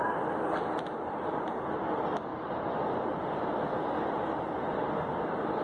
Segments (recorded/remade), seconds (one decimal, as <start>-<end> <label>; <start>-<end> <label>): 0.0-5.6 recorded